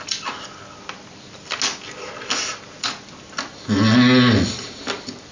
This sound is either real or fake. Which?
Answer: real